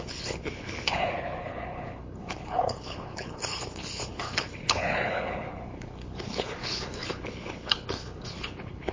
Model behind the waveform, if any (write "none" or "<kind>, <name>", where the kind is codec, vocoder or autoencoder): codec, HILCodec